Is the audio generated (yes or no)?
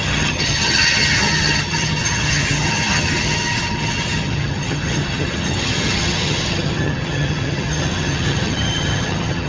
yes